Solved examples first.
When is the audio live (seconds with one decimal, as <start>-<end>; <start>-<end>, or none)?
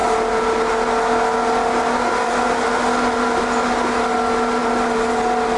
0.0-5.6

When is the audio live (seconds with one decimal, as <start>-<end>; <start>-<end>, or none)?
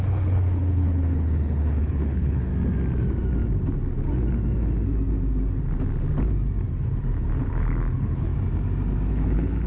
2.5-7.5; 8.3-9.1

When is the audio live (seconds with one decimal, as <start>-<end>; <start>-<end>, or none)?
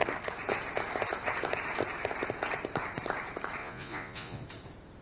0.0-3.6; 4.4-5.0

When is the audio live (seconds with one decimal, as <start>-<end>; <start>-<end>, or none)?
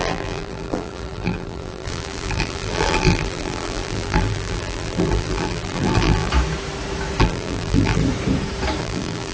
6.3-7.2; 8.0-8.8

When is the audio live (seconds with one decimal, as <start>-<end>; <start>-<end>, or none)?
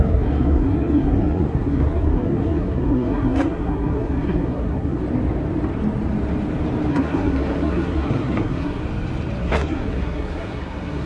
5.0-6.9; 8.8-9.4